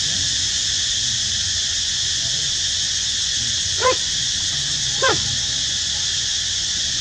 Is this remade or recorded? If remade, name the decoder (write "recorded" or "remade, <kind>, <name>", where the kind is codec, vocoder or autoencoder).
remade, vocoder, Vocos